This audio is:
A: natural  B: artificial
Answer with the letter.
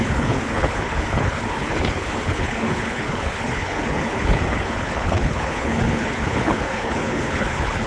B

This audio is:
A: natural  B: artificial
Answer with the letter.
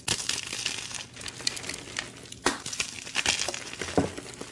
A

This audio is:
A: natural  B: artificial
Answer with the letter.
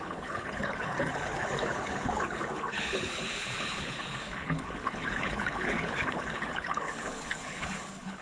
B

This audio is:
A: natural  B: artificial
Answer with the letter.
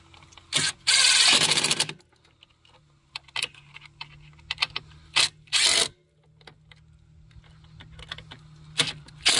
A